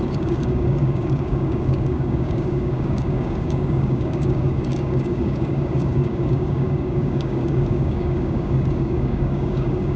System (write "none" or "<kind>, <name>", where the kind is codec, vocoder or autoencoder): codec, DAC